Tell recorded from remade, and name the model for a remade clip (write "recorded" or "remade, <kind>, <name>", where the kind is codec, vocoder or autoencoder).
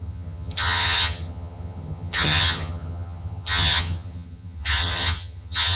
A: remade, vocoder, HiFi-GAN